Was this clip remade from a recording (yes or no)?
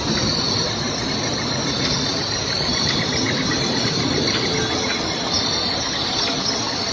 no